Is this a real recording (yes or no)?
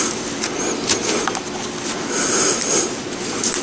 yes